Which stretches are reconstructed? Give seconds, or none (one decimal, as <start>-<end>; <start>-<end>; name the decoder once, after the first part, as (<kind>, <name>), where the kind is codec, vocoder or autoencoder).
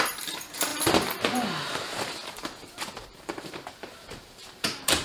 0.0-5.0 (vocoder, BigVGAN v2)